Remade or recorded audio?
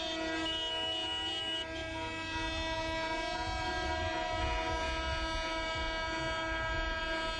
recorded